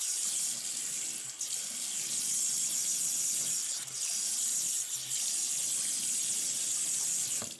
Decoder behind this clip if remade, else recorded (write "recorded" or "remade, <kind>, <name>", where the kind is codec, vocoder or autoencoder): recorded